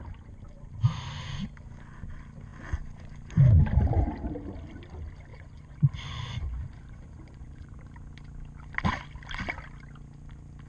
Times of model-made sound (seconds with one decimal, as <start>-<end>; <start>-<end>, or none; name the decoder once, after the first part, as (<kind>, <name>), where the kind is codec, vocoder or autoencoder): 5.3-7.8 (vocoder, Vocos)